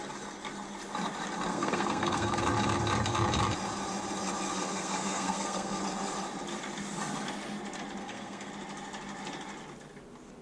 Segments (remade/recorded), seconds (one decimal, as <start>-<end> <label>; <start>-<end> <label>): 0.0-1.5 recorded; 1.5-2.4 remade; 2.4-4.6 recorded; 4.6-5.8 remade; 5.8-8.0 recorded; 8.0-8.5 remade; 8.5-10.4 recorded